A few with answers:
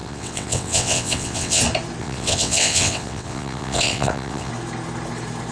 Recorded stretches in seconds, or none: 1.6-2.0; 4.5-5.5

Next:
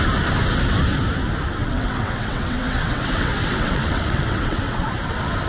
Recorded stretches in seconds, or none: 0.0-1.6; 4.9-5.5

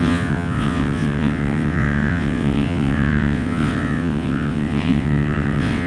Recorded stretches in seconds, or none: none

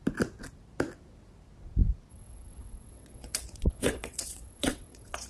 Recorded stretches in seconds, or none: 0.0-2.1